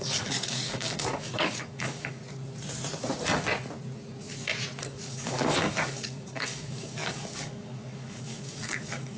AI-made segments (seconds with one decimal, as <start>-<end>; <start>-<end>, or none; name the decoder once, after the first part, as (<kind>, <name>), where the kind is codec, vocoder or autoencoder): 0.0-2.2 (codec, DAC); 4.8-9.2